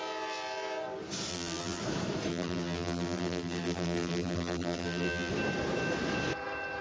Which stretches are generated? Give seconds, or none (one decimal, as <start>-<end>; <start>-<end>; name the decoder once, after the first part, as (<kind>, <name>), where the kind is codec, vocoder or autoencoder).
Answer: 1.3-1.8 (vocoder, BigVGAN v2); 2.3-5.3